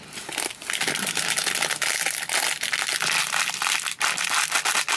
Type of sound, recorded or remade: recorded